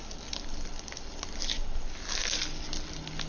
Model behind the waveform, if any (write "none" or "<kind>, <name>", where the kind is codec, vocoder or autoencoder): none